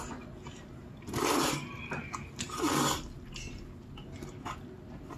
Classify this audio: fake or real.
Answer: real